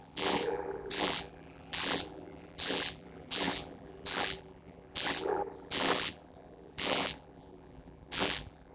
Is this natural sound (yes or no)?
no